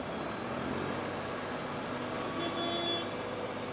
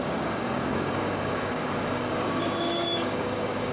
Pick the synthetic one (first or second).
second